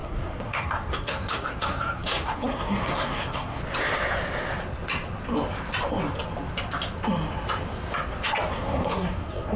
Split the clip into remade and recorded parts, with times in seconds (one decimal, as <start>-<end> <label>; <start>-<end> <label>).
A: 0.0-3.6 remade; 3.6-8.5 recorded; 8.5-9.6 remade